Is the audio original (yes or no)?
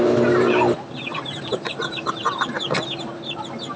no